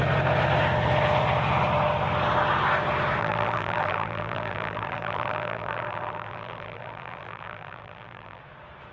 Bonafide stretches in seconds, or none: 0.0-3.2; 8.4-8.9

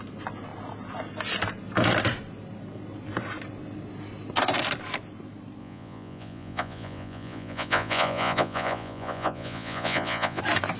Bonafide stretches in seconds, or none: 0.0-5.6; 10.4-10.8